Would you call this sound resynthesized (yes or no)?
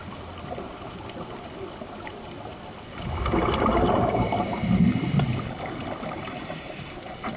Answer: no